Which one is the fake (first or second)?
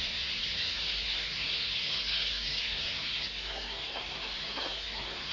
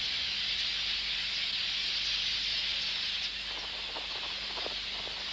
first